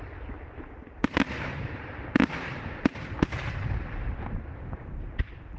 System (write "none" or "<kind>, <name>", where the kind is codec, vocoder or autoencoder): vocoder, BigVGAN v2